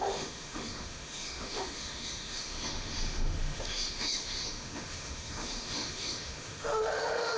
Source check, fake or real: fake